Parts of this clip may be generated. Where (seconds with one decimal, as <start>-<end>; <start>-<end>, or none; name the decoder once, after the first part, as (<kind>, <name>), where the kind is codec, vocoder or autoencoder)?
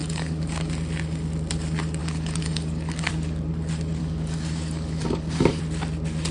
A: 0.0-0.7 (codec, DAC); 2.0-3.1; 4.0-5.6